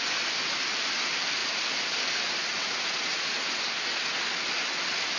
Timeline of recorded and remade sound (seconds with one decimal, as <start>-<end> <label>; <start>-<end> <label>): 0.0-5.2 recorded